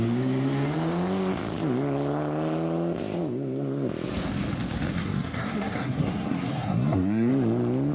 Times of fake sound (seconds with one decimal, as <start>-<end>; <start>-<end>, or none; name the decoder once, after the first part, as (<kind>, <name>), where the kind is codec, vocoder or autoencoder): 5.0-7.3 (codec, SNAC)